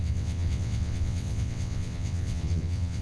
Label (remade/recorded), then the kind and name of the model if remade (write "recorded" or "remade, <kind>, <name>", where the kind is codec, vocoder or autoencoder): remade, vocoder, WaveNeXt